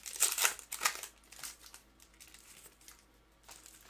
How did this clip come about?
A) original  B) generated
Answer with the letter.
A